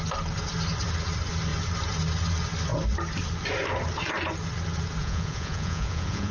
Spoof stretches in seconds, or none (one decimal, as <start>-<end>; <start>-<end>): 5.0-6.3